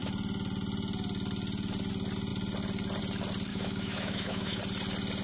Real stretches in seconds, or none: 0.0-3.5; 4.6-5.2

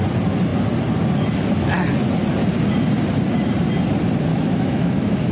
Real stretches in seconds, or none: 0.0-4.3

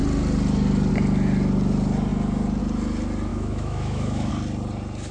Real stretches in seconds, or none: 0.0-3.3; 4.3-5.1